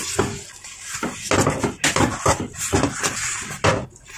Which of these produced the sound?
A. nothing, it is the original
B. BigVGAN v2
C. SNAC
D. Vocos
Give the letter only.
A